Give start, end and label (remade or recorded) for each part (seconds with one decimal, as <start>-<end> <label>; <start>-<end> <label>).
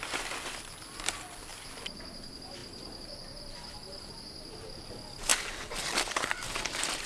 0.0-7.1 recorded